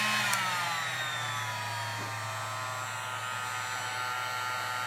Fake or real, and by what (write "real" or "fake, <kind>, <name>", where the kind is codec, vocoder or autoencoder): real